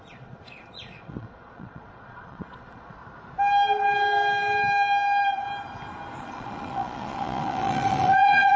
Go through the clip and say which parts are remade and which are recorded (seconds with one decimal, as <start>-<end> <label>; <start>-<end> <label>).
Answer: 0.0-3.0 remade; 3.0-6.2 recorded; 6.2-8.6 remade